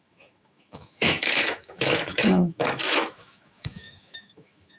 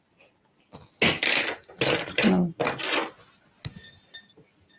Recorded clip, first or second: second